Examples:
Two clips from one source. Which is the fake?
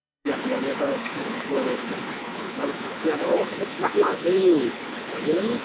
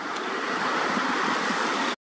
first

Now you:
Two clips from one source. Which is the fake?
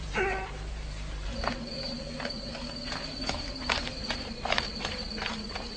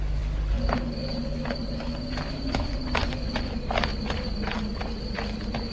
first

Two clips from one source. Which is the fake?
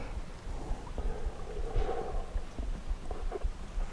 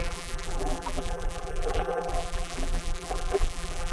second